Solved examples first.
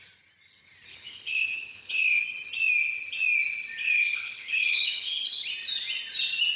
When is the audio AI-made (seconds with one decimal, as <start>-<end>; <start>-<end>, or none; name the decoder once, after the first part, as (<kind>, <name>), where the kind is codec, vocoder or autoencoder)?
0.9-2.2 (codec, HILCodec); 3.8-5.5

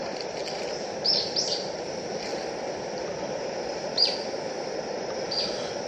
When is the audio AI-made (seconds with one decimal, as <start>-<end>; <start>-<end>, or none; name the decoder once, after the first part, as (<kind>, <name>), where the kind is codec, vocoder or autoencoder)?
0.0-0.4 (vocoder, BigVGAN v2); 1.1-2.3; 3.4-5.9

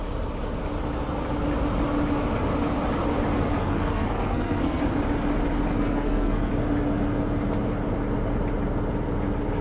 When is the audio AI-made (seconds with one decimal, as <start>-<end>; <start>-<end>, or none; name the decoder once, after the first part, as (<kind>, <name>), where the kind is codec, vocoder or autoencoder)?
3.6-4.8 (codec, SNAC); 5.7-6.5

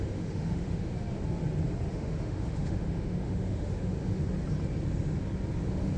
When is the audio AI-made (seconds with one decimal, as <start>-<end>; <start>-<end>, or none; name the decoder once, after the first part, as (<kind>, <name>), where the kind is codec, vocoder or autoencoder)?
0.0-0.9 (autoencoder, DAC-VAE); 1.9-4.2; 5.6-6.0

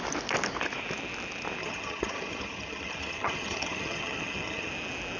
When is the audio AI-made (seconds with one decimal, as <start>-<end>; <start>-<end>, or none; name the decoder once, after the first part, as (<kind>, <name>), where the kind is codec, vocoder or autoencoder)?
1.6-4.7 (vocoder, HiFi-GAN)

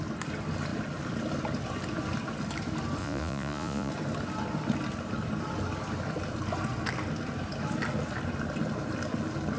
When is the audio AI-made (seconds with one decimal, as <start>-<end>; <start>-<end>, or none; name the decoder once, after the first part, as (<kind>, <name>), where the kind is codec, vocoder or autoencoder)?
3.0-3.9 (vocoder, Vocos)